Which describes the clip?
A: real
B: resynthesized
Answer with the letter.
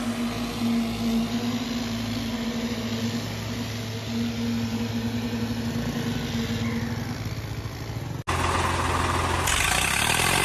A